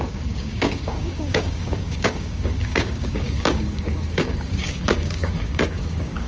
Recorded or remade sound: remade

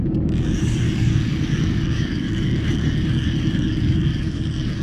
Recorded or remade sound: remade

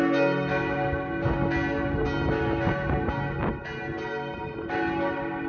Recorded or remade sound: recorded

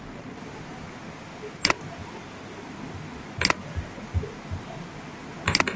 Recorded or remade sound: recorded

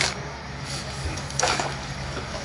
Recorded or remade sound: remade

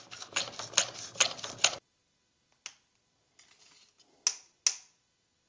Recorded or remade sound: recorded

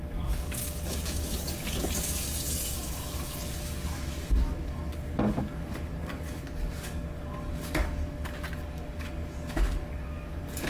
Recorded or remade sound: remade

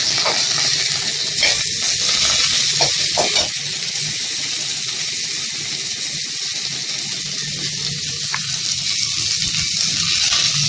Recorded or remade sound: recorded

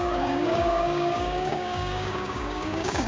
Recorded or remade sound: remade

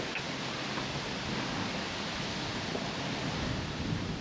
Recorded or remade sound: recorded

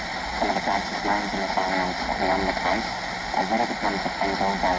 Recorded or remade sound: recorded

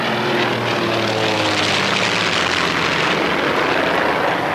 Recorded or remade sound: recorded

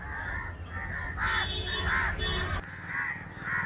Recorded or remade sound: recorded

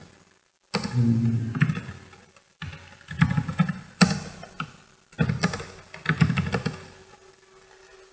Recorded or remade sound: recorded